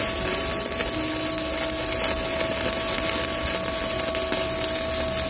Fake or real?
real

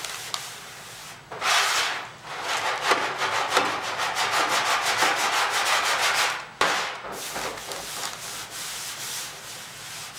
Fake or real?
real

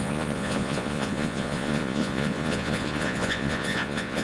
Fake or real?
fake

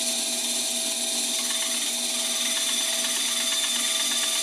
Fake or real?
real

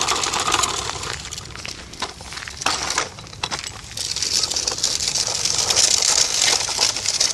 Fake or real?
real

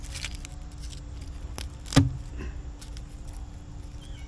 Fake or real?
real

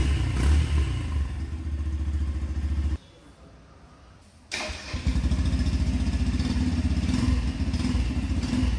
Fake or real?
real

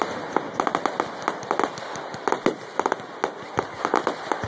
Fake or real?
real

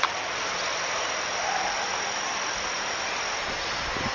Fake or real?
real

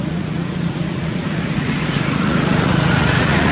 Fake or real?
fake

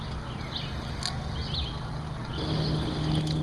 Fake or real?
real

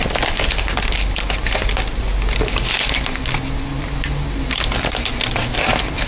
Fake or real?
real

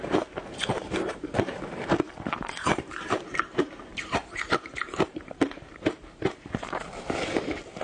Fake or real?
fake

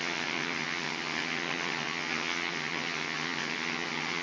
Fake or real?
fake